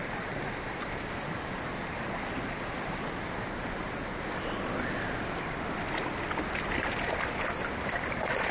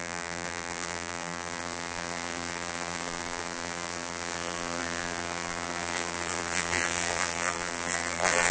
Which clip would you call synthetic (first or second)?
second